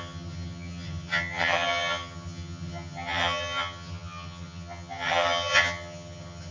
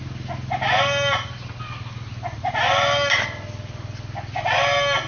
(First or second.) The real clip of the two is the second